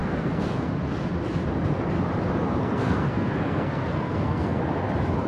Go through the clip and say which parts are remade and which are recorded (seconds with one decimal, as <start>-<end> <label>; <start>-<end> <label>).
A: 0.0-0.7 remade; 0.7-2.6 recorded; 2.6-4.6 remade; 4.6-5.3 recorded